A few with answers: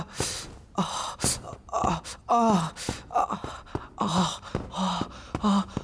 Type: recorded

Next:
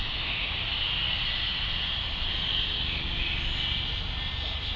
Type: recorded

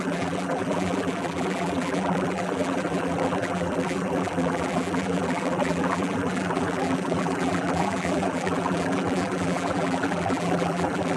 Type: remade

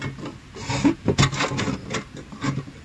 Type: recorded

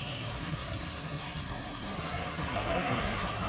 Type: remade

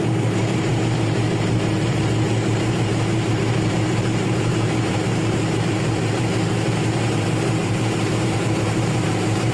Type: remade